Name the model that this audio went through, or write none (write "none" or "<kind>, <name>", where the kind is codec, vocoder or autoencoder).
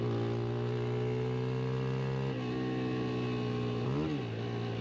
none